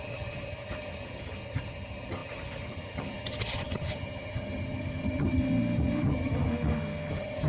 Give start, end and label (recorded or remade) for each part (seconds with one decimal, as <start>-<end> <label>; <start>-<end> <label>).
0.0-5.4 remade; 5.4-6.0 recorded; 6.0-6.5 remade; 6.5-7.1 recorded; 7.1-7.5 remade